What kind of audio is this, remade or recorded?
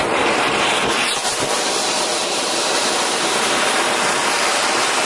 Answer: remade